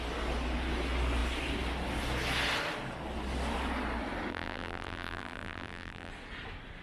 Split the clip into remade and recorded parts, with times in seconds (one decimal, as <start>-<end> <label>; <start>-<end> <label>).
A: 0.0-4.3 recorded; 4.3-6.1 remade; 6.1-6.8 recorded